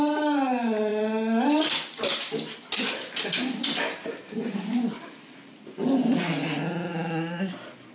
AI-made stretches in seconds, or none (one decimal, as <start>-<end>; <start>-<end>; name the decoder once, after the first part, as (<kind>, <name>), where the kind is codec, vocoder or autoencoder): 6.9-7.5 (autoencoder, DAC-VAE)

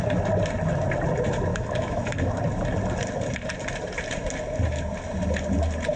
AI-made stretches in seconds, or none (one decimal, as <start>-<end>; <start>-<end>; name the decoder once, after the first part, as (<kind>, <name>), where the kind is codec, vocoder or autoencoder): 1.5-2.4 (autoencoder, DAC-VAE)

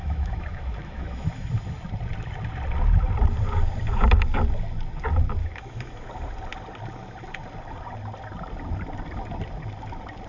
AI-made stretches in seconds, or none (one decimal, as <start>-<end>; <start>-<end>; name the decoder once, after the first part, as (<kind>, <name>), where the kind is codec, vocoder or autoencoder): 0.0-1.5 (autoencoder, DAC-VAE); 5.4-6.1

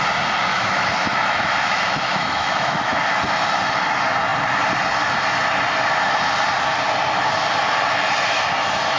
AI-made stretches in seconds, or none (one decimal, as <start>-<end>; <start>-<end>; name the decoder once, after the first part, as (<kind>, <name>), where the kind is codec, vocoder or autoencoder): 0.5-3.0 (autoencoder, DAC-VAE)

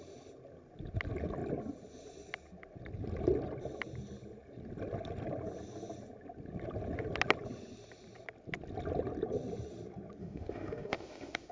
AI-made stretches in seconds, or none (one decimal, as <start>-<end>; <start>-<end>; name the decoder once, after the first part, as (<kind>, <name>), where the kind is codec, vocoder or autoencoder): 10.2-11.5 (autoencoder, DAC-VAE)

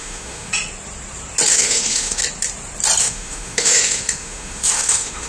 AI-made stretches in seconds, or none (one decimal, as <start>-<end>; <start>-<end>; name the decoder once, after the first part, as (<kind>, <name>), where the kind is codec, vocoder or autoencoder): 0.0-0.5 (autoencoder, DAC-VAE); 1.5-2.2; 3.0-5.3